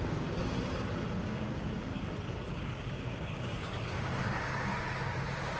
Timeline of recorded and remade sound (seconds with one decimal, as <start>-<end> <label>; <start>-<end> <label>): 0.0-0.4 remade; 0.4-1.2 recorded; 1.2-1.9 remade; 1.9-2.5 recorded; 2.5-4.7 remade; 4.7-5.6 recorded